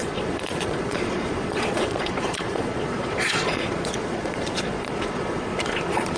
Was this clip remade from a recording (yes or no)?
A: yes